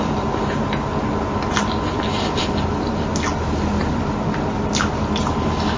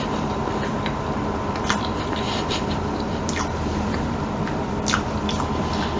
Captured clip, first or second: first